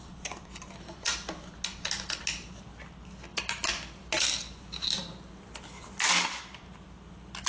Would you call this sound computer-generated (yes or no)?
no